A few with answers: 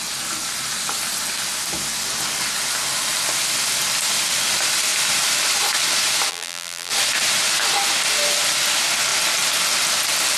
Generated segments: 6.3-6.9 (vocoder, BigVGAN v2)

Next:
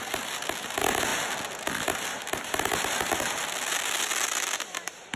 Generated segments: none

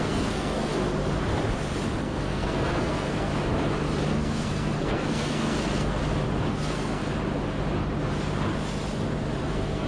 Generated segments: 0.0-0.7 (codec, SNAC); 2.0-3.3; 4.1-6.0; 6.5-7.0; 9.4-9.9

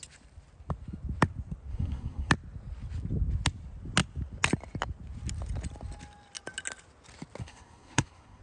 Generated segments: 1.7-2.3 (codec, SNAC); 7.4-8.4